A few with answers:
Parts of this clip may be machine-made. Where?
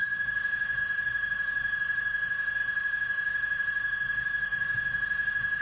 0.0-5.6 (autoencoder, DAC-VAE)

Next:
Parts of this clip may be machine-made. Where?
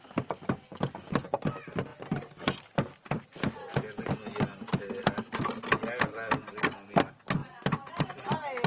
none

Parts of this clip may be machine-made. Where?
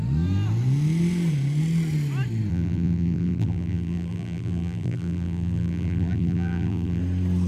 2.5-7.0 (vocoder, BigVGAN v2)